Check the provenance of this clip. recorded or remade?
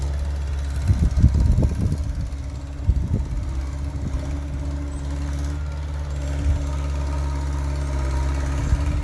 recorded